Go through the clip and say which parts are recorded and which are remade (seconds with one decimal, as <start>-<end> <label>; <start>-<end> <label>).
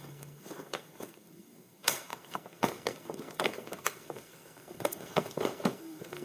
0.0-6.2 remade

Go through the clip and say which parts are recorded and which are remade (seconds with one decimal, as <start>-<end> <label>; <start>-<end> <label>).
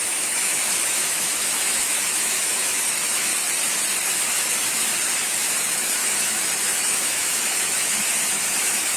0.0-3.3 remade; 3.3-3.9 recorded; 3.9-9.0 remade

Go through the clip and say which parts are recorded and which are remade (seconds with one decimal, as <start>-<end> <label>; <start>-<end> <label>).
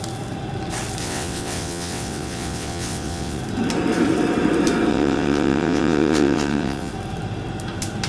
0.0-1.0 recorded; 1.0-3.4 remade; 3.4-4.9 recorded; 4.9-6.9 remade; 6.9-8.1 recorded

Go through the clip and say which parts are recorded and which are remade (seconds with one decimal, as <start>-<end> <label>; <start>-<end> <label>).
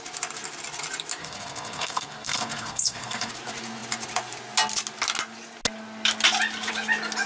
0.0-1.2 recorded; 1.2-3.3 remade; 3.3-7.3 recorded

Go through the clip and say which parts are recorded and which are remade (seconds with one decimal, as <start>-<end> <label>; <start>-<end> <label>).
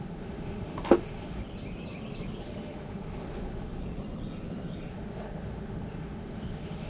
0.0-1.4 remade; 1.4-2.4 recorded; 2.4-3.8 remade; 3.8-4.9 recorded; 4.9-6.9 remade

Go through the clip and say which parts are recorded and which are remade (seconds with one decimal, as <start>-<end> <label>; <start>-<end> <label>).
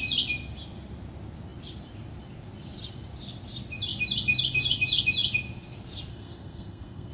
0.0-6.1 recorded; 6.1-7.1 remade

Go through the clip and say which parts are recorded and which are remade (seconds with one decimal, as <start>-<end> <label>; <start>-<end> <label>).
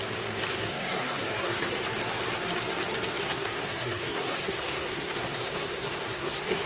0.0-0.7 recorded; 0.7-1.8 remade; 1.8-3.2 recorded; 3.2-6.7 remade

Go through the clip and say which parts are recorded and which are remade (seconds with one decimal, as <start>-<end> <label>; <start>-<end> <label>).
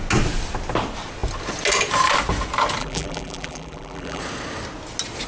0.0-2.8 recorded; 2.8-4.2 remade; 4.2-5.3 recorded